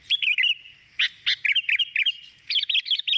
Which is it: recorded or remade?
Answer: recorded